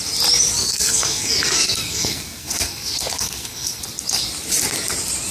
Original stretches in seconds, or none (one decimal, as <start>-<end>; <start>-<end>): 0.0-0.6; 3.8-5.3